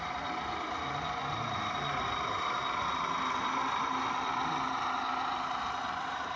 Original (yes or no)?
yes